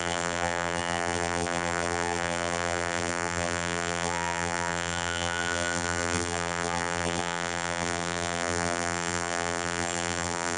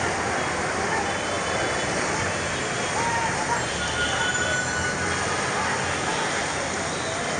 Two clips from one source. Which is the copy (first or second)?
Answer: first